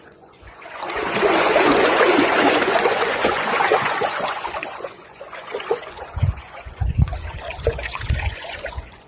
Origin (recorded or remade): remade